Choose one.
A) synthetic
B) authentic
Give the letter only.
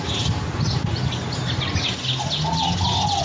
B